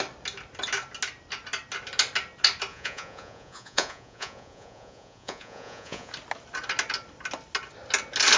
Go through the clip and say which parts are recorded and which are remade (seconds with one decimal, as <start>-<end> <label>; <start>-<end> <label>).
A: 0.0-2.7 recorded; 2.7-6.1 remade; 6.1-8.4 recorded